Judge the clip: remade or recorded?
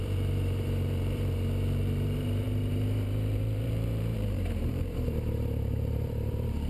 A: remade